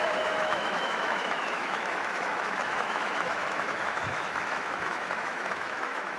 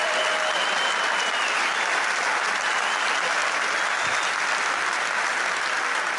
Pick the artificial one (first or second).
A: first